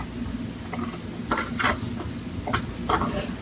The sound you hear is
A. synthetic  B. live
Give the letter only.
B